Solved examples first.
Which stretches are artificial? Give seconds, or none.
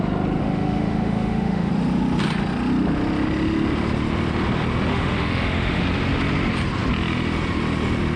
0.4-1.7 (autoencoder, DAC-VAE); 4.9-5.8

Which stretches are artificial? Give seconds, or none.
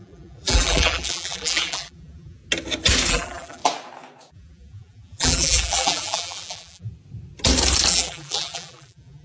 0.0-2.4 (vocoder, BigVGAN v2); 3.1-3.6; 4.3-6.9; 7.9-9.2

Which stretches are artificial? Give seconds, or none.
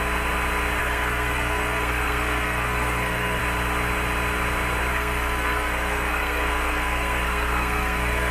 0.8-3.4 (codec, SNAC); 4.9-8.3